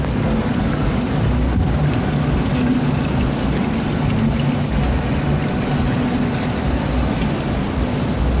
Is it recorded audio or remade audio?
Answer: recorded